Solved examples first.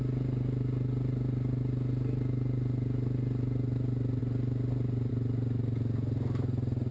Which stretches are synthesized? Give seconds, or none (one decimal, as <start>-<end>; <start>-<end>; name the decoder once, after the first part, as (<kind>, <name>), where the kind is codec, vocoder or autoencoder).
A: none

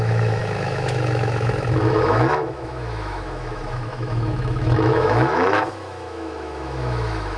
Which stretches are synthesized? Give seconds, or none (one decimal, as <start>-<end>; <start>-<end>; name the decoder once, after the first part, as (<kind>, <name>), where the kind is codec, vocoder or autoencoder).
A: 0.0-7.4 (autoencoder, DAC-VAE)

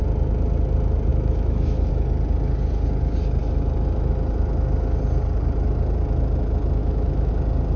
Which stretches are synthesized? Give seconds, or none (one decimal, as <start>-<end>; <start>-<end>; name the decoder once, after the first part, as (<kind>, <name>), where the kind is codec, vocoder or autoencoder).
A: 1.1-1.9 (autoencoder, DAC-VAE); 6.8-7.3